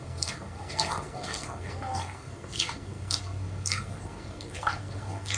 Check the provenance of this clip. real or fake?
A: fake